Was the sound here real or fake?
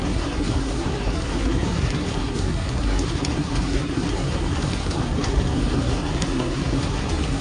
fake